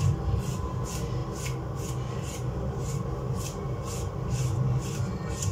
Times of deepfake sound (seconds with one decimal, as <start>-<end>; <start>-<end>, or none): 0.0-1.2; 1.9-2.8; 4.1-5.5